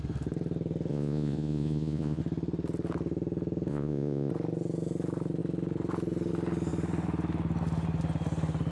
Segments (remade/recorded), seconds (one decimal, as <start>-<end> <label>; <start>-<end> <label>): 0.0-0.9 recorded; 0.9-2.2 remade; 2.2-3.7 recorded; 3.7-4.3 remade; 4.3-8.7 recorded